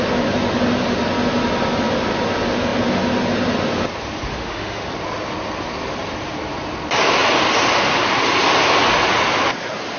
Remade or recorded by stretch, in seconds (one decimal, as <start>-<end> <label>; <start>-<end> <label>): 0.0-4.3 recorded; 4.3-4.9 remade; 4.9-10.0 recorded